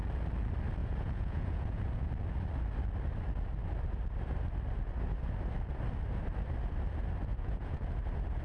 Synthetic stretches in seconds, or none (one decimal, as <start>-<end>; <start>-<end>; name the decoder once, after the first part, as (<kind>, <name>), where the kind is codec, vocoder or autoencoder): 0.8-2.1 (vocoder, Vocos); 7.3-7.9